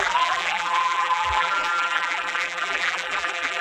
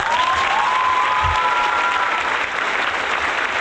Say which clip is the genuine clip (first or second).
second